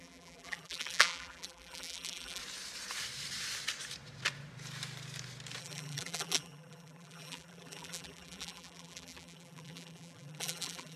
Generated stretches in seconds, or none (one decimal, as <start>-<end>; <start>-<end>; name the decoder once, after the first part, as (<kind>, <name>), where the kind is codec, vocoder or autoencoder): 0.0-2.4 (vocoder, BigVGAN v2); 5.6-11.0